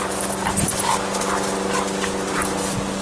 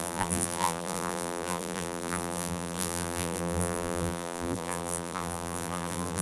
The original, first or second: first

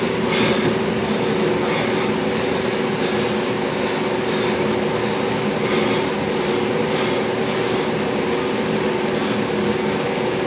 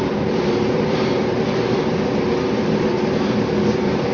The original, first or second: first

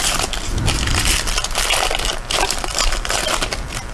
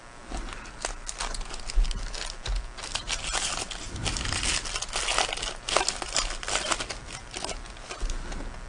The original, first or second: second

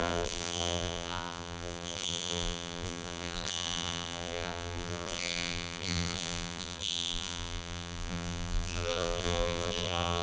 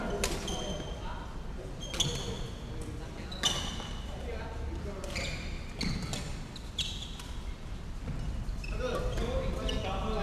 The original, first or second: second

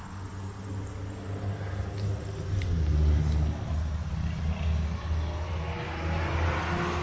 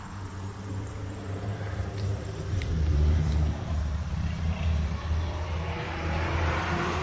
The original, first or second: first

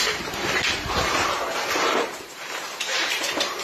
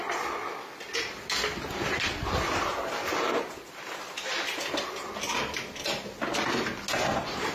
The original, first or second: second